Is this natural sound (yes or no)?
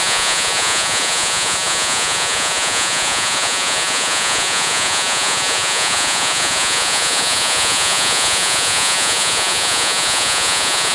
no